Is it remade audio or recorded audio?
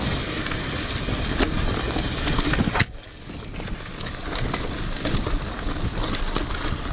recorded